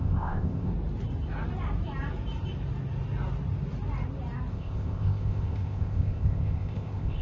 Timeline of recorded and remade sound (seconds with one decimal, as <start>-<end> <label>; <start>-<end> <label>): 0.0-0.7 remade; 0.7-4.5 recorded; 4.5-7.2 remade